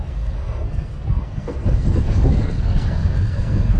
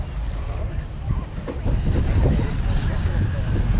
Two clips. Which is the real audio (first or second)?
second